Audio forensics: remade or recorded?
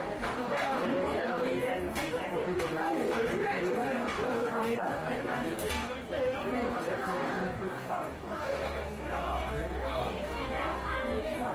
remade